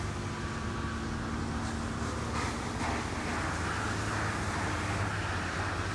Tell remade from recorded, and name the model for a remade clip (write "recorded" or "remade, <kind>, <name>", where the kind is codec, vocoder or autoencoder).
recorded